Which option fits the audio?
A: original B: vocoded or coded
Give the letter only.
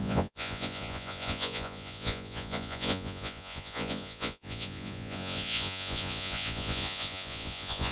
B